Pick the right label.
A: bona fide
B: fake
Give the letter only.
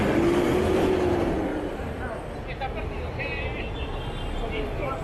A